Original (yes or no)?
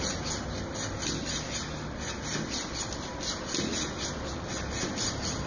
yes